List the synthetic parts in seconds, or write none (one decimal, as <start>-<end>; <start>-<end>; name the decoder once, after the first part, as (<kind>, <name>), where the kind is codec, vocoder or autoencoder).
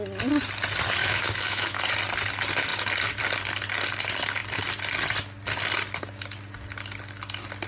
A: 1.0-1.8 (autoencoder, DAC-VAE)